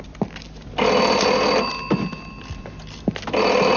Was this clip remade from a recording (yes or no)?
no